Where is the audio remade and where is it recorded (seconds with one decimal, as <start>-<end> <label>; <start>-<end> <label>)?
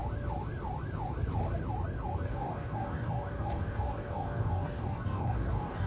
0.0-2.3 recorded; 2.3-5.9 remade